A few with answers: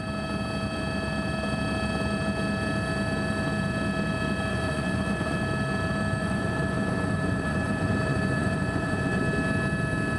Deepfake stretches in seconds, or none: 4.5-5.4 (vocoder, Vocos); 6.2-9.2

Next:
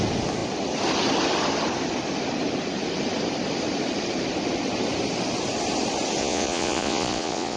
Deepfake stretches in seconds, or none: 6.2-7.6 (vocoder, Vocos)

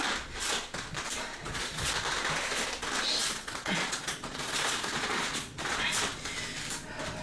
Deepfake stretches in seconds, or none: 1.3-1.9 (vocoder, Vocos); 3.2-5.9

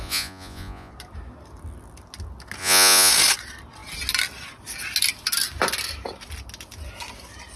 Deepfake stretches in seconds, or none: 0.0-0.9 (vocoder, Vocos); 2.6-3.1

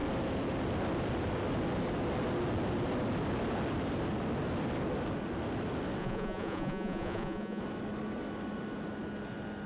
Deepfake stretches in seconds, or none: 6.0-7.6 (vocoder, Vocos)

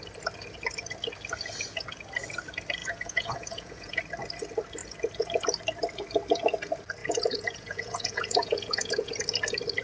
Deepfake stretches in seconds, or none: 2.8-4.0 (vocoder, Vocos); 7.0-9.1

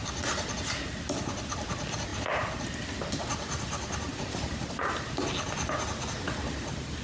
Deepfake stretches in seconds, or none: none